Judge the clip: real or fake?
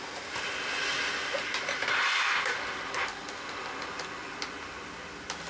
real